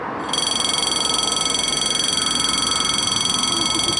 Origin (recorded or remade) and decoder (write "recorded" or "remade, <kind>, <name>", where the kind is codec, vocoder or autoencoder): recorded